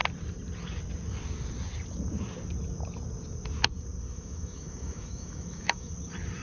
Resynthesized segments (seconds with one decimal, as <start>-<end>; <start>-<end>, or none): 4.1-5.9